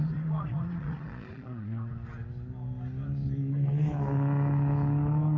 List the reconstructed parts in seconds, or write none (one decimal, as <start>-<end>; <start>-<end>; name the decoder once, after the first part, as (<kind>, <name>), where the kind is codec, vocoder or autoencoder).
0.0-1.9 (vocoder, Vocos)

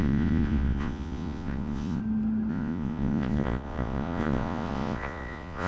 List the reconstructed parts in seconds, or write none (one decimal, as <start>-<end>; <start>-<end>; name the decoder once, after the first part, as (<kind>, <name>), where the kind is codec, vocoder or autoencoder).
0.0-2.0 (vocoder, Vocos); 2.5-5.7

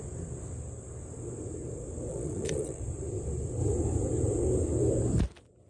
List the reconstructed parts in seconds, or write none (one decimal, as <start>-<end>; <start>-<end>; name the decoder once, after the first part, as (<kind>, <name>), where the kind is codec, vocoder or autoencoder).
2.1-2.8 (vocoder, Vocos)

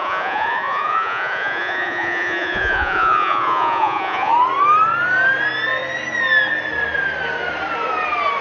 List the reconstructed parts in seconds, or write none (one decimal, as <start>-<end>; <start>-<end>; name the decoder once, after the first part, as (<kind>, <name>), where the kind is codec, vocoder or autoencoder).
0.0-4.3 (vocoder, Vocos)

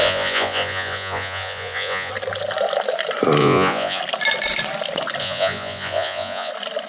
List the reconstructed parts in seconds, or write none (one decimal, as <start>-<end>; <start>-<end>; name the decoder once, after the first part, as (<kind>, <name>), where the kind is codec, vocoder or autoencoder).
0.0-2.1 (vocoder, Vocos); 3.4-4.0; 5.2-6.5

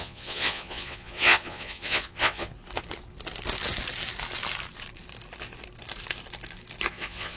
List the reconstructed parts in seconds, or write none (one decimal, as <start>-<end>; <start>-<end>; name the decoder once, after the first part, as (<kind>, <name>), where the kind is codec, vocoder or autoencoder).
0.0-2.5 (vocoder, Vocos); 6.9-7.4

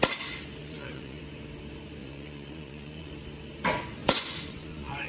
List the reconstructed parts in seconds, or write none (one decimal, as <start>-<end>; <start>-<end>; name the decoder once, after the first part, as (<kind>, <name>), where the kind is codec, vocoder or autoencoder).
0.6-1.2 (vocoder, Vocos); 2.0-3.1; 4.0-5.1